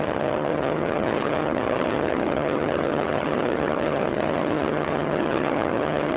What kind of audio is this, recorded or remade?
remade